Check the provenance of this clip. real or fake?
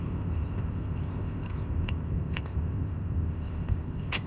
fake